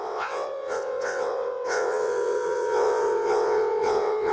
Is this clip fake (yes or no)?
yes